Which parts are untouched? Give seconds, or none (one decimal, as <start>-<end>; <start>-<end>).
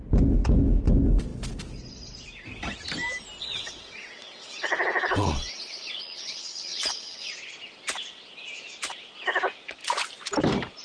0.0-3.4; 7.3-10.8